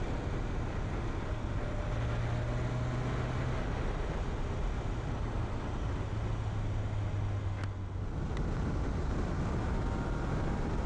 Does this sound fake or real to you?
real